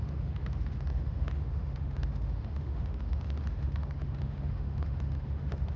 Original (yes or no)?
no